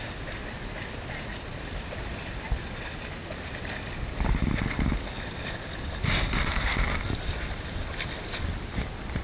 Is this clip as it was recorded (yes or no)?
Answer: yes